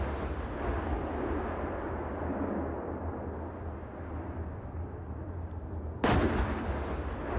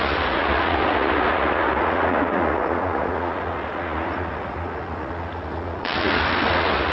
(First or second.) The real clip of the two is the first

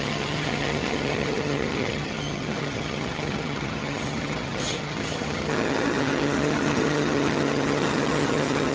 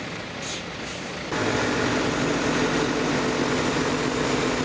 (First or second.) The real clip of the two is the second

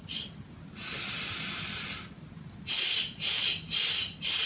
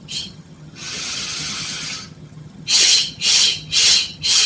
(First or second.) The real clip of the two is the first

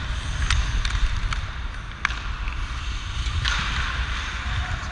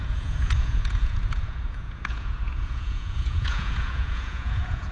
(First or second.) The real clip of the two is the first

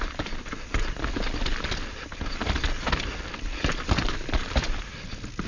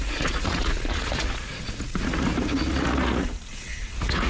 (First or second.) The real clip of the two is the first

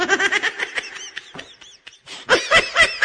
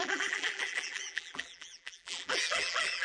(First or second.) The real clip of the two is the first